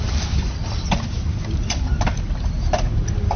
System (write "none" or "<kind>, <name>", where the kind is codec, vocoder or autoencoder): none